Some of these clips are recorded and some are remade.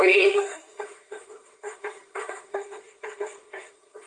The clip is remade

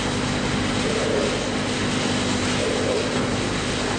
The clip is recorded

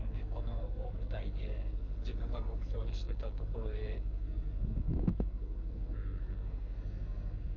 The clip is remade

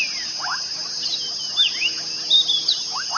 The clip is recorded